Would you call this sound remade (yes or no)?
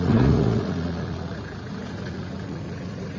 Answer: yes